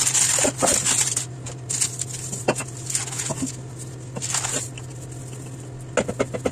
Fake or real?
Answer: real